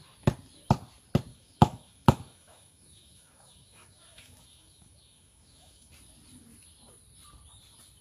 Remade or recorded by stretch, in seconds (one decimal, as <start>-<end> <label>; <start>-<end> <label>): 0.0-1.3 recorded; 1.3-5.9 remade; 5.9-8.0 recorded